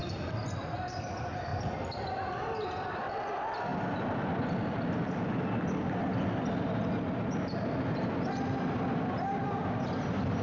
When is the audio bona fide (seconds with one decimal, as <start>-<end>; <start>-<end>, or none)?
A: 1.0-1.5; 3.1-10.4